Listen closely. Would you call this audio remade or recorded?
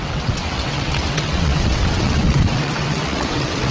remade